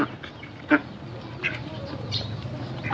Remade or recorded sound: recorded